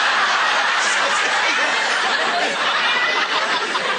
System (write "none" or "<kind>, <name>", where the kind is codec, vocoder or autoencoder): none